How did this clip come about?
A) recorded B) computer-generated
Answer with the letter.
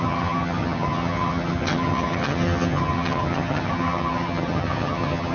B